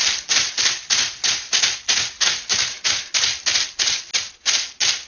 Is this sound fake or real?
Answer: real